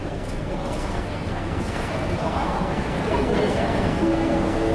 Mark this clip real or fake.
fake